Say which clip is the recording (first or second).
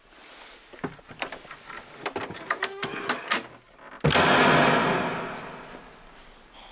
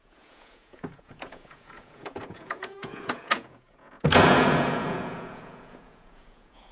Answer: first